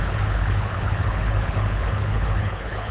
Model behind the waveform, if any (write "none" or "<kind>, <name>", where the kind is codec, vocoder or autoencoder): codec, HILCodec